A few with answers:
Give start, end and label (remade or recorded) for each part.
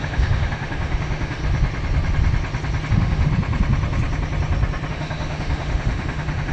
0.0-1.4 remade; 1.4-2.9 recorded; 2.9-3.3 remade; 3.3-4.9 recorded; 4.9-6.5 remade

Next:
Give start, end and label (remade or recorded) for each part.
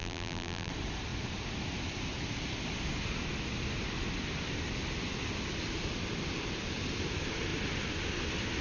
0.0-0.7 remade; 0.7-8.6 recorded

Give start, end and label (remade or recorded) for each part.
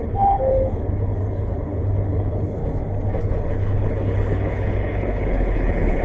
0.0-2.6 remade; 2.6-3.2 recorded; 3.2-6.0 remade